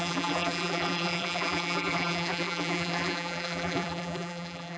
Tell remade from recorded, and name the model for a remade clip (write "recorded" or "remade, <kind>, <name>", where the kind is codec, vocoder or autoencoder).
remade, vocoder, BigVGAN v2